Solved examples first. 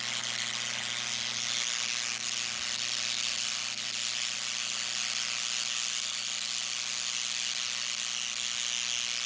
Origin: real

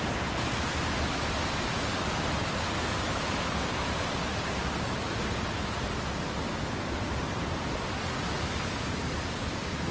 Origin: real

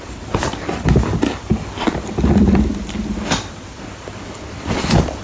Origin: real